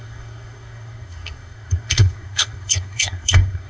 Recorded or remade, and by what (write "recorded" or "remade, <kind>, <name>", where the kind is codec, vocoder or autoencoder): remade, codec, SNAC